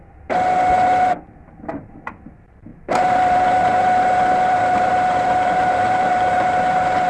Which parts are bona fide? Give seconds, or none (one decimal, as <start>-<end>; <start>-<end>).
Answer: 0.0-2.7